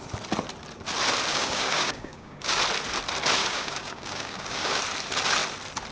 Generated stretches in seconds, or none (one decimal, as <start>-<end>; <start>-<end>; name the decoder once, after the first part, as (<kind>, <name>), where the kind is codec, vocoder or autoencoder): 1.3-2.6 (codec, DAC); 3.4-4.8